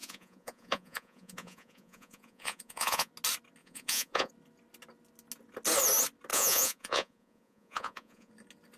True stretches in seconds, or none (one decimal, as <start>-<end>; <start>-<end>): 3.1-3.6; 4.3-6.3; 8.3-8.8